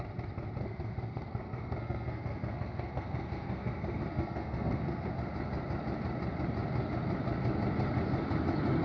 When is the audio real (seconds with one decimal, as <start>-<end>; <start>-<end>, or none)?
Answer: 0.0-0.6; 5.1-8.8